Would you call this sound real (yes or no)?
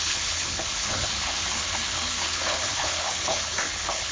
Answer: no